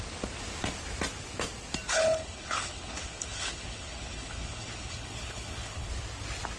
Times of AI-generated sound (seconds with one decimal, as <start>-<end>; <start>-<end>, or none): 1.9-5.9